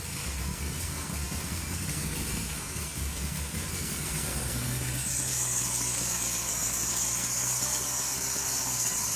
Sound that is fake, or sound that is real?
fake